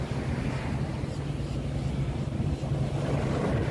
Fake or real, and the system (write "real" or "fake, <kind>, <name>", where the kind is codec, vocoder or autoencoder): real